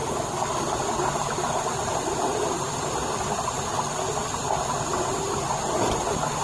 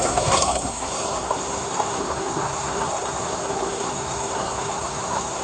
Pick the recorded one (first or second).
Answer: first